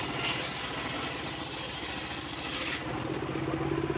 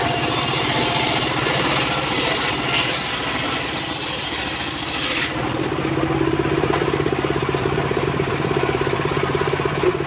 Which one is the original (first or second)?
first